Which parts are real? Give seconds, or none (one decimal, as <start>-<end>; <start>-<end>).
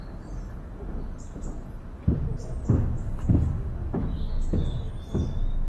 0.0-3.8; 4.9-5.7